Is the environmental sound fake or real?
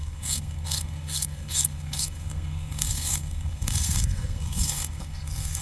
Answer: fake